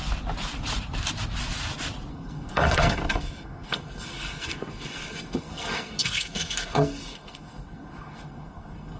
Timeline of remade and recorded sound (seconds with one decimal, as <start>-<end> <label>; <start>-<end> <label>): 0.0-2.1 recorded; 2.1-9.0 remade